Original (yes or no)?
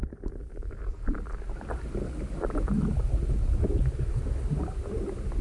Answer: yes